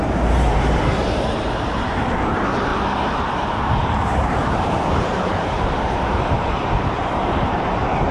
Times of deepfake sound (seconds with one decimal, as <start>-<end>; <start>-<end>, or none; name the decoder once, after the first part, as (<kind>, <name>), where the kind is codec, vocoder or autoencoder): 0.0-2.7 (vocoder, BigVGAN v2); 3.6-8.1